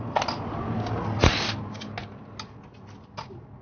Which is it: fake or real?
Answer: real